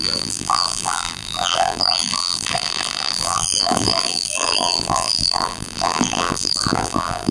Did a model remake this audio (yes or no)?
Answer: yes